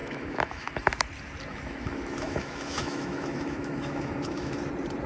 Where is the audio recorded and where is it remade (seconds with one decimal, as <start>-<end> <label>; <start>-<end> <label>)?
0.0-0.7 remade; 0.7-1.5 recorded; 1.5-4.6 remade; 4.6-5.1 recorded